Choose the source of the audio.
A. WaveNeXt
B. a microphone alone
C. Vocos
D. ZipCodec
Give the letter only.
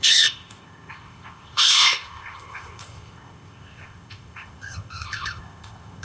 D